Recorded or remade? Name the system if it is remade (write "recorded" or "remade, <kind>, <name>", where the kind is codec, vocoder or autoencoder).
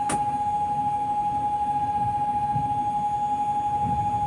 recorded